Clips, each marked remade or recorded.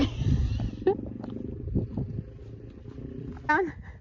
recorded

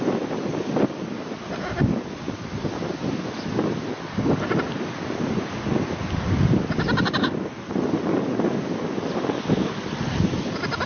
recorded